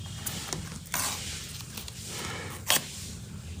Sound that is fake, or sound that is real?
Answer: real